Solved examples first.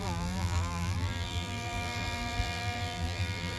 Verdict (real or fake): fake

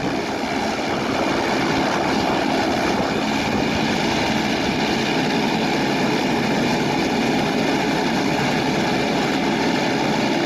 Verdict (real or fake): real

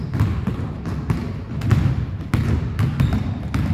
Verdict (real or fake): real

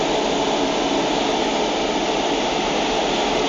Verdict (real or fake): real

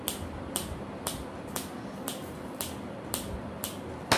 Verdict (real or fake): real